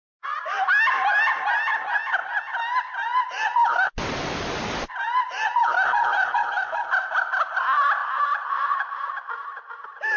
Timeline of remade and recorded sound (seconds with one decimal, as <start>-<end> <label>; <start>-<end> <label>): 0.0-8.0 recorded; 8.0-9.1 remade; 9.1-10.2 recorded